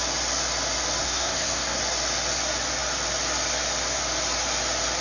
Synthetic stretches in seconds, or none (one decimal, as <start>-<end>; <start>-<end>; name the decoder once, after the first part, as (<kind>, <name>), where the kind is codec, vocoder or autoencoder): 1.0-1.8 (codec, SNAC)